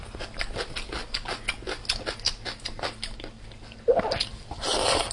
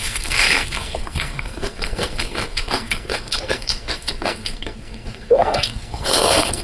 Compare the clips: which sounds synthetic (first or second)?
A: second